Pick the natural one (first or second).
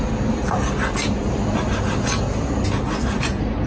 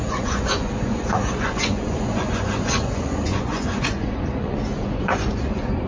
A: first